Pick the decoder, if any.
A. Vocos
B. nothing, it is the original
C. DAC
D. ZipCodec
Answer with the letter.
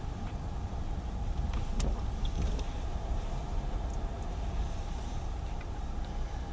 B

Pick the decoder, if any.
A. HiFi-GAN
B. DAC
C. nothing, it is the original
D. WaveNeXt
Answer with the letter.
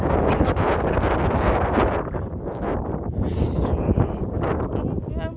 C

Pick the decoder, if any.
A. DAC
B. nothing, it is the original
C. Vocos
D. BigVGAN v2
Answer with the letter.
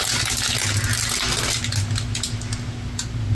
B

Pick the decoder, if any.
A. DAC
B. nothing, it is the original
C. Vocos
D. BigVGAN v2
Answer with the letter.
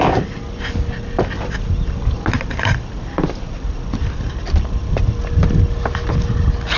B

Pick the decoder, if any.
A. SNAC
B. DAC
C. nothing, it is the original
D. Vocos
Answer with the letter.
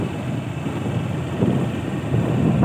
C